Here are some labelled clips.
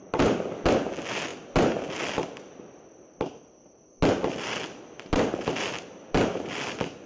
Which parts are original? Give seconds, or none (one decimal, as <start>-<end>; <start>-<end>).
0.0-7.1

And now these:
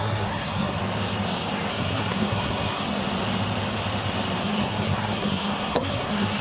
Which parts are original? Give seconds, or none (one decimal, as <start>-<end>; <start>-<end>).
0.8-1.7; 3.0-4.4

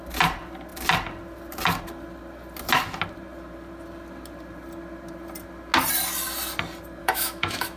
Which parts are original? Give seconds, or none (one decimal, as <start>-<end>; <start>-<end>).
0.0-7.0

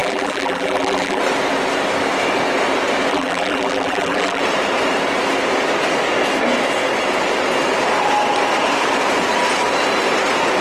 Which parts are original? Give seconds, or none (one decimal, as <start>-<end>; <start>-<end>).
1.2-3.1; 4.4-10.6

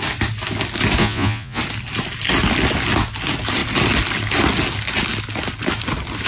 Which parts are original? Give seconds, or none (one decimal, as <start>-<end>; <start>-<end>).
0.0-1.0; 1.6-6.3